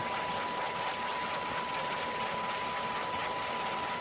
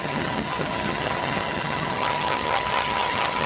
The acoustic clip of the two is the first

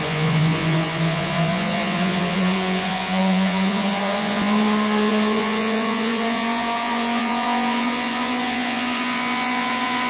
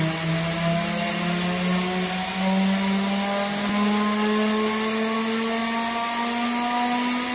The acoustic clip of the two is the second